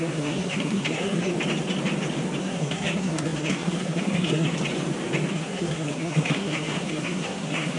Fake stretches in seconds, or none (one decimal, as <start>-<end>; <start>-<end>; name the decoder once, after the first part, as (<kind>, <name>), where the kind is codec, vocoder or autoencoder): 0.0-1.3 (codec, SNAC); 2.4-4.6; 5.3-7.8

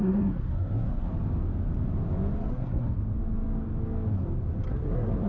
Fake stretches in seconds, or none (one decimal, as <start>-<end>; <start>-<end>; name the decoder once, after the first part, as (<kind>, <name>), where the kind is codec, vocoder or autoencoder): 0.0-1.1 (codec, SNAC); 2.5-3.0; 4.7-5.3

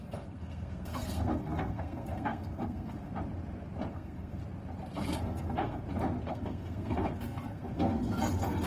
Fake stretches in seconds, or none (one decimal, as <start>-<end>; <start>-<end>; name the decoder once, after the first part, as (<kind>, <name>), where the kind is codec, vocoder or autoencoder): 0.0-3.1 (codec, SNAC); 3.9-4.4; 5.2-5.8; 6.3-8.7

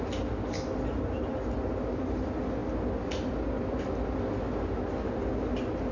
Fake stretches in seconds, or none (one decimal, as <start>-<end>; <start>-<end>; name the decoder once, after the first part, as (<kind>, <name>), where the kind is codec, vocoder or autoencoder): none

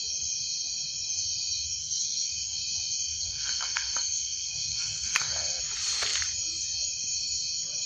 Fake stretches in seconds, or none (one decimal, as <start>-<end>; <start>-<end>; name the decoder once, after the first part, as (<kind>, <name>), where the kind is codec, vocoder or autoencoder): 1.8-2.6 (codec, SNAC); 3.1-5.6

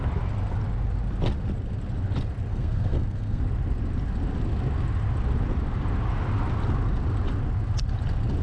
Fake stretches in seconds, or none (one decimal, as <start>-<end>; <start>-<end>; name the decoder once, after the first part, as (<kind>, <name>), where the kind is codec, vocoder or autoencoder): 2.5-3.4 (codec, SNAC)

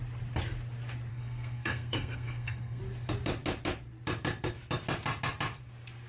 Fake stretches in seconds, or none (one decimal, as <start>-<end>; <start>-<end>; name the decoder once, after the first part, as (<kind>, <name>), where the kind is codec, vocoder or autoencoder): 1.1-2.8 (codec, SNAC)

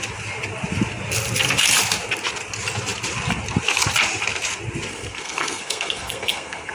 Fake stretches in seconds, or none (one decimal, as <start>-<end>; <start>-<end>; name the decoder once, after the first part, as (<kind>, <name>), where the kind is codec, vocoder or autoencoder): 4.9-6.7 (codec, SNAC)